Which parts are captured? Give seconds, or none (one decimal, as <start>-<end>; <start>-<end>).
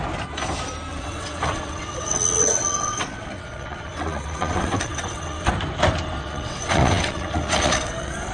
0.0-0.9; 5.5-6.2